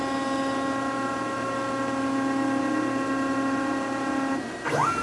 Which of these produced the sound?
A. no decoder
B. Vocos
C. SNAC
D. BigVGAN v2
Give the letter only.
A